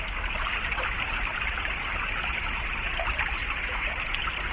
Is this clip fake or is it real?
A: real